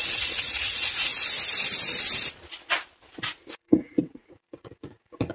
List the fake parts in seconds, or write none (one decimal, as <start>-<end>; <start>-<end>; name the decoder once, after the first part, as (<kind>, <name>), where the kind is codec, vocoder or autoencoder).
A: 0.0-1.1 (vocoder, Vocos); 3.5-5.3